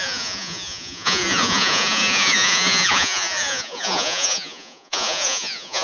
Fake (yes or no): yes